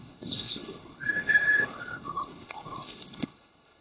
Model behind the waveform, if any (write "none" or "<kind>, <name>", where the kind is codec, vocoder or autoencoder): codec, HILCodec